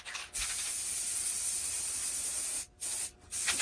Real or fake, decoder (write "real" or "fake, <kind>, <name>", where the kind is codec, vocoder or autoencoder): real